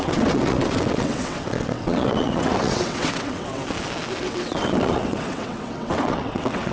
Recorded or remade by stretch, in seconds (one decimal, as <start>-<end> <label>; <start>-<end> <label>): 0.0-3.6 remade; 3.6-4.2 recorded; 4.2-6.7 remade